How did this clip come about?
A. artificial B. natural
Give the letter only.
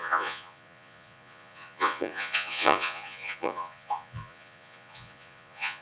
A